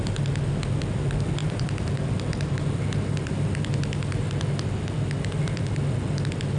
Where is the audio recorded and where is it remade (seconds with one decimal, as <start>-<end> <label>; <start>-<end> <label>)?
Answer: 0.0-1.4 recorded; 1.4-2.0 remade; 2.0-6.6 recorded